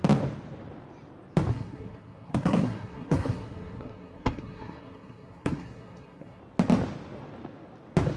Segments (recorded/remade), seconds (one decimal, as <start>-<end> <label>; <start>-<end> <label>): 0.0-1.5 recorded; 1.5-6.4 remade; 6.4-8.2 recorded